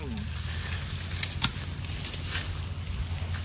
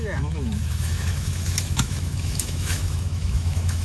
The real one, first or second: first